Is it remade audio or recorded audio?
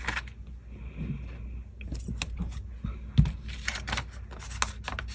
recorded